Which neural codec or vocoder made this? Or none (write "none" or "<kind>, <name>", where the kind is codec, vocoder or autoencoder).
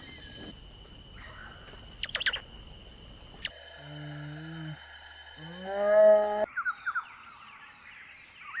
none